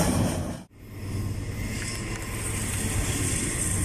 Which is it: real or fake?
real